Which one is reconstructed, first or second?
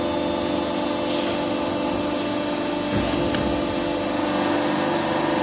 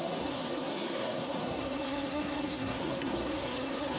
second